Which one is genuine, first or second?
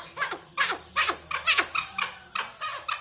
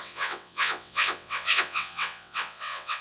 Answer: first